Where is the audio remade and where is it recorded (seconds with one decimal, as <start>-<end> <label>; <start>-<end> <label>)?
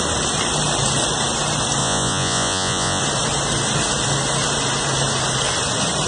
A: 0.0-1.8 recorded; 1.8-3.0 remade; 3.0-6.1 recorded